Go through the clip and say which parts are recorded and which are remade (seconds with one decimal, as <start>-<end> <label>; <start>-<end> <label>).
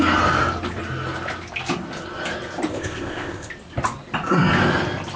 0.0-2.7 recorded; 2.7-3.5 remade; 3.5-5.2 recorded